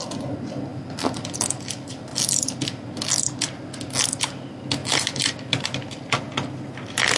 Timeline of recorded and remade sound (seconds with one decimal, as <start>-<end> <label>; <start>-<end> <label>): 0.0-7.2 recorded